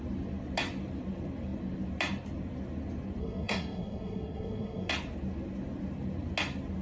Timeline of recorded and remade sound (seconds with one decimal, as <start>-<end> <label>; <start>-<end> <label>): 0.0-3.2 recorded; 3.2-4.9 remade; 4.9-6.8 recorded